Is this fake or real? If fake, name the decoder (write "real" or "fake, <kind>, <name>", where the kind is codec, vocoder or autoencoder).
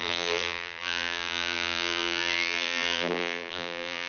fake, vocoder, BigVGAN v2